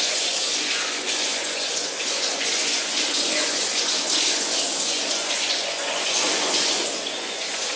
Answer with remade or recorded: remade